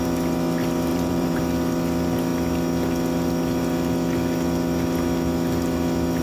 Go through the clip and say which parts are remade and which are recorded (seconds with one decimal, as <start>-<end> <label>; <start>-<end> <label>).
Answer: 0.0-0.9 recorded; 0.9-1.4 remade; 1.4-6.2 recorded